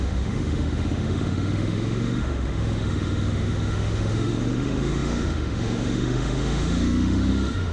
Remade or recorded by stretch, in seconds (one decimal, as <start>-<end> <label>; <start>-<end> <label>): 0.0-7.7 remade